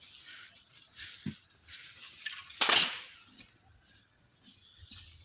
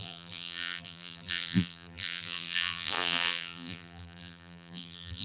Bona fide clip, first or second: first